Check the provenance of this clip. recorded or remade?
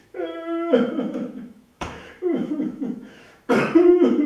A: remade